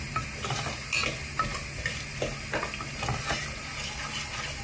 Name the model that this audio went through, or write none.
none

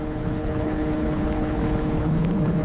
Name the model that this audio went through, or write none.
codec, HILCodec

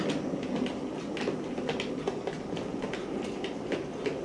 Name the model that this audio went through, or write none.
none